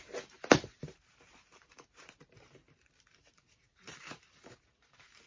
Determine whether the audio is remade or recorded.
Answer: remade